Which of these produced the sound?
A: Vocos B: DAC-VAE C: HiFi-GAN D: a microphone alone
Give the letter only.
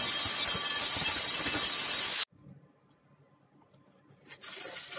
D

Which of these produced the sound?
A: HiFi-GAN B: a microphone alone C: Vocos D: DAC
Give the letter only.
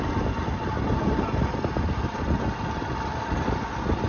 B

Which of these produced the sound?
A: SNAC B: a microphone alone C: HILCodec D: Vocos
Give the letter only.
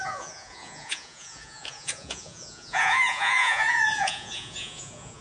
D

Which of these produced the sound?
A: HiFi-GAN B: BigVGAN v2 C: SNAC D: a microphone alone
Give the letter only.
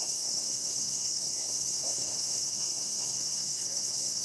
C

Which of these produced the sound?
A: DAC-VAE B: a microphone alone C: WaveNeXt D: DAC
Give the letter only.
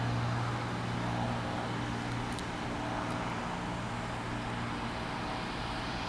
B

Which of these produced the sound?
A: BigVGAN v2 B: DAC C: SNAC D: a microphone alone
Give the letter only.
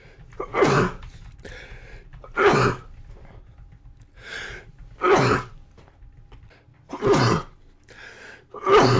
D